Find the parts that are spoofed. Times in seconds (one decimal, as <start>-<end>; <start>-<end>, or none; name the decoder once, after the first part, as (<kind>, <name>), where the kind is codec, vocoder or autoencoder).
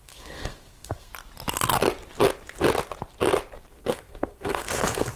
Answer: 0.0-1.1 (codec, SNAC); 3.7-5.2